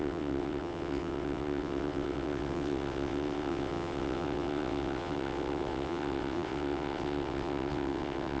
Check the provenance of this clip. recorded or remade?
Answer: remade